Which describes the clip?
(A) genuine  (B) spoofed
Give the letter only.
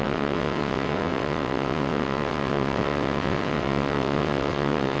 B